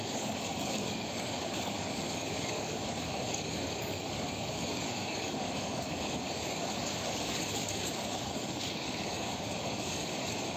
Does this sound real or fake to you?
fake